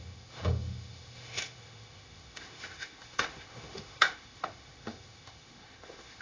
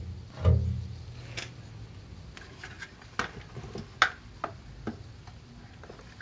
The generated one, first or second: first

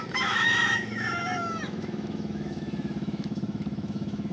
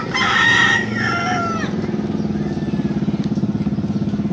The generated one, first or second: first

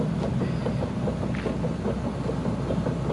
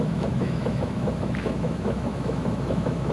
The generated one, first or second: second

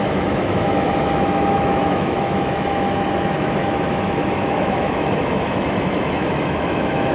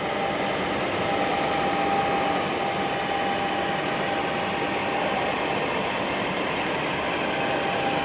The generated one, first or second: first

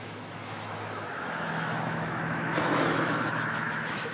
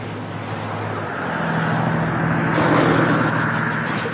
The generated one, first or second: first